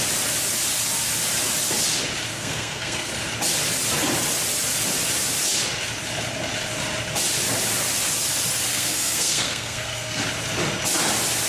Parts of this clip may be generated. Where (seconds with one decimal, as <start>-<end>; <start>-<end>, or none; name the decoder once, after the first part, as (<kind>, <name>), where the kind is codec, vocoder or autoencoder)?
2.3-3.1 (codec, SNAC); 8.7-10.2